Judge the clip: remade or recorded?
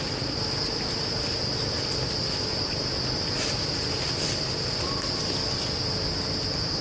recorded